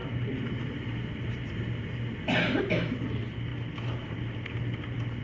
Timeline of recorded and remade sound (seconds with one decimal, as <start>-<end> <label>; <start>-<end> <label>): 0.0-1.9 remade; 1.9-5.2 recorded